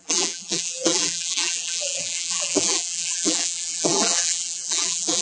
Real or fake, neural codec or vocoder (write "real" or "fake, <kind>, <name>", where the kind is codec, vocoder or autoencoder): fake, vocoder, BigVGAN v2